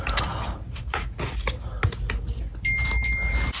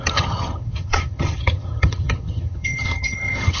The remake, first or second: second